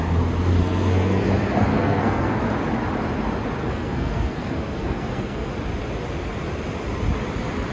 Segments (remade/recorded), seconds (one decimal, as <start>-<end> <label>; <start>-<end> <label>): 0.0-0.6 recorded; 0.6-1.2 remade; 1.2-1.7 recorded; 1.7-2.4 remade; 2.4-3.6 recorded; 3.6-5.5 remade; 5.5-7.7 recorded